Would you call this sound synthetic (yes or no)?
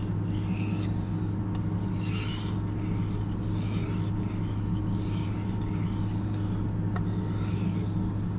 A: no